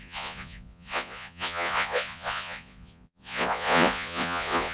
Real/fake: fake